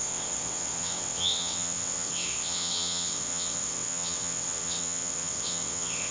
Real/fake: fake